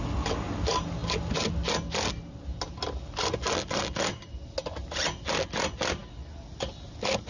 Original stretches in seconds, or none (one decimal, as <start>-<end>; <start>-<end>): 0.0-7.3